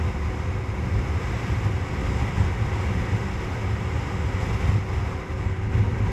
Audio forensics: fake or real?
real